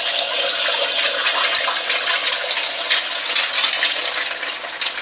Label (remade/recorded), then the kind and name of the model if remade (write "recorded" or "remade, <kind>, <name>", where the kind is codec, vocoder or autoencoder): recorded